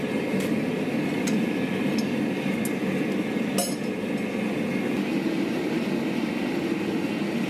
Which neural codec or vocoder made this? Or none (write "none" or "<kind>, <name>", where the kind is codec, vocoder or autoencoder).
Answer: none